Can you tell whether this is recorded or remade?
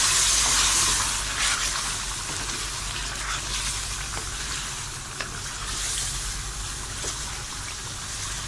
recorded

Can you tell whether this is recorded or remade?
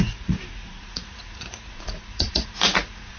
remade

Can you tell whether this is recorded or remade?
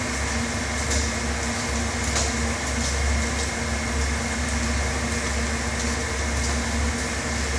recorded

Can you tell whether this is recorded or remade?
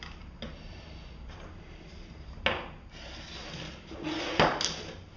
recorded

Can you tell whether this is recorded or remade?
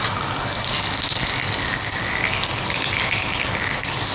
recorded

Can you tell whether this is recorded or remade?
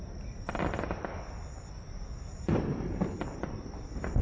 recorded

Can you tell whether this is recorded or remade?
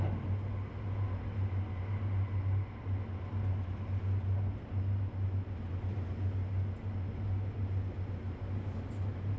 recorded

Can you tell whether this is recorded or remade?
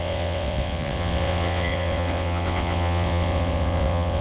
remade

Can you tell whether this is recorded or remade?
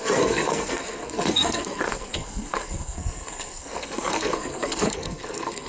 remade